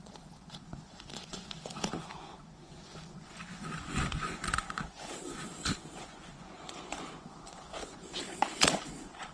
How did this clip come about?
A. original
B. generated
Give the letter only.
B